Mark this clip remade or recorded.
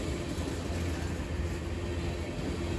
recorded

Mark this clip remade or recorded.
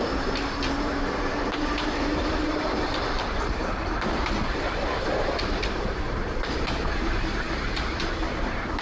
remade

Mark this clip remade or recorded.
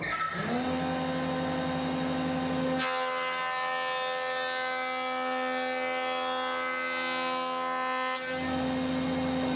recorded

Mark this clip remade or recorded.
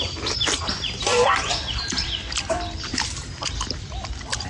remade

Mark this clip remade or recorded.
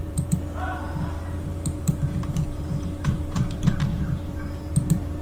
remade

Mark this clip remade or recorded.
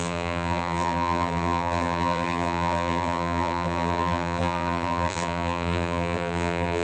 remade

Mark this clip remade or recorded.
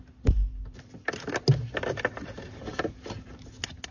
recorded